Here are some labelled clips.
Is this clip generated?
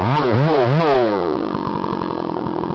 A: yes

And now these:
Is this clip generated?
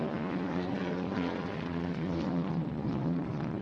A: yes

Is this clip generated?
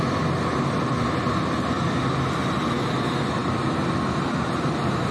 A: no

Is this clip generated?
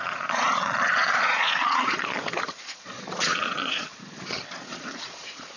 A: yes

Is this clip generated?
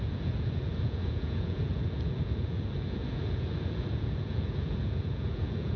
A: yes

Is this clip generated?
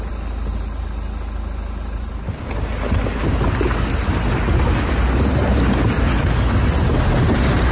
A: no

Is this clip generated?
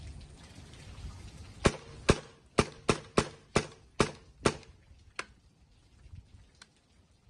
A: no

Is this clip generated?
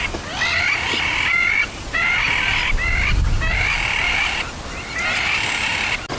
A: no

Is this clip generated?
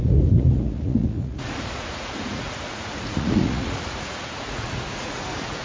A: yes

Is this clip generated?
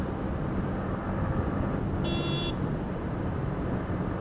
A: no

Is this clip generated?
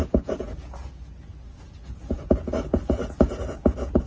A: yes